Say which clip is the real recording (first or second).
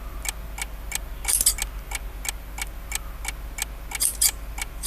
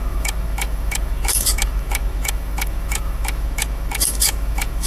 first